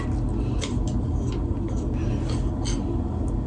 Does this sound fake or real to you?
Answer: real